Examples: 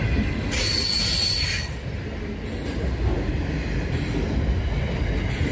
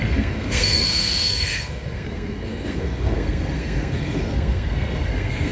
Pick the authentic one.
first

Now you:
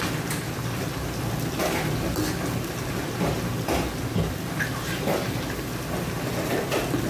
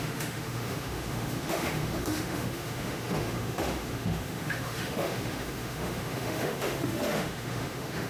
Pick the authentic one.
first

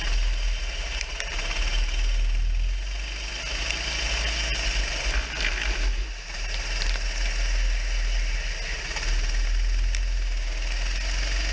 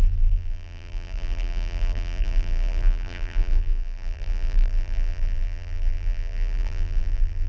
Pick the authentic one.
first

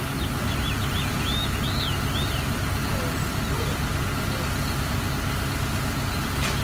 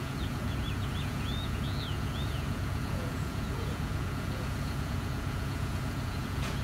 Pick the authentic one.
first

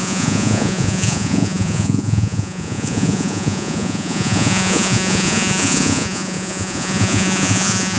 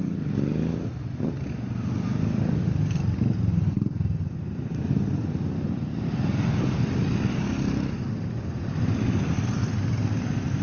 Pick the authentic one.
second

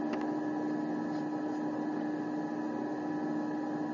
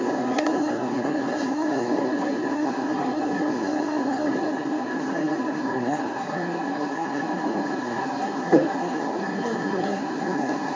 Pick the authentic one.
first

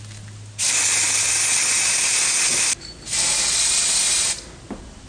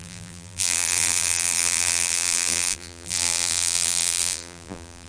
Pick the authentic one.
first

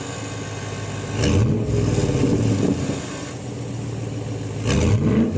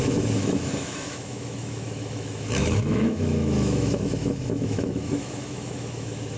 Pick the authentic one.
first